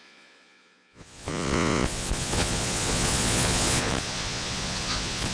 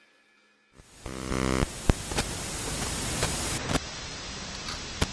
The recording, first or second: second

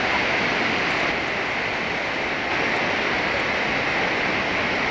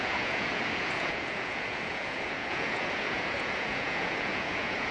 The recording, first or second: first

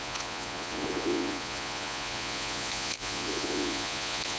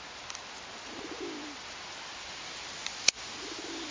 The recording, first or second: second